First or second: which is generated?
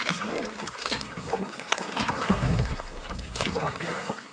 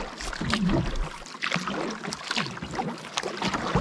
first